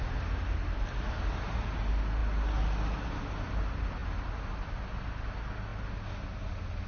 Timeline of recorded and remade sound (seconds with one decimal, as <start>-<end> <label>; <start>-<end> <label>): 0.0-6.9 recorded